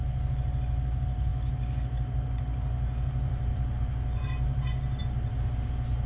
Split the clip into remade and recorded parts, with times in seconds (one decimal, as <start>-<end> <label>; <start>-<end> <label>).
0.0-6.1 recorded